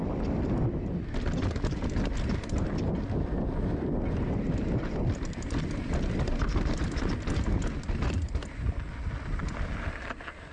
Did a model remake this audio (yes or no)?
no